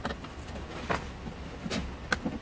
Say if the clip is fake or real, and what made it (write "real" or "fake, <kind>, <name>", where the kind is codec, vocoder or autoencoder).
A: real